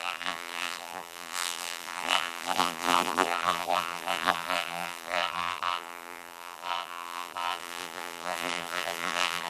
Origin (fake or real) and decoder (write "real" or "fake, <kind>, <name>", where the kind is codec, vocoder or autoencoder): fake, vocoder, BigVGAN v2